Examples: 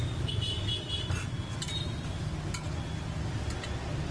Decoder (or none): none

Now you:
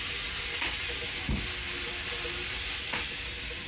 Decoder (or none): none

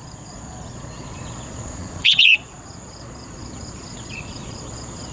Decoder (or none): vocoder, Vocos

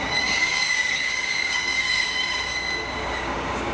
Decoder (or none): codec, DAC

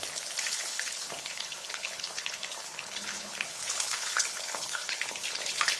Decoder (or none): codec, HILCodec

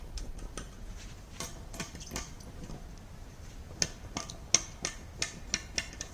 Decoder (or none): none